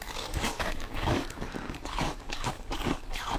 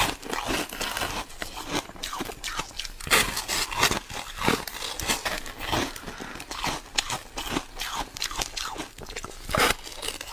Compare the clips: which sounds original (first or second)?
second